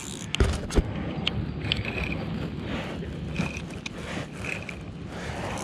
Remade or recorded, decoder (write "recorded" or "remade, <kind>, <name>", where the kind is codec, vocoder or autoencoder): recorded